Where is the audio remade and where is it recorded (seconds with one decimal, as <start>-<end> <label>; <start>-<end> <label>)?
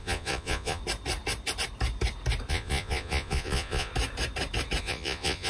0.0-0.8 remade; 0.8-2.5 recorded; 2.5-3.9 remade; 3.9-4.8 recorded; 4.8-5.5 remade